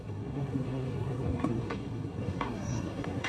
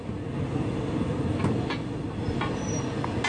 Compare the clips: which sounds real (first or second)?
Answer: second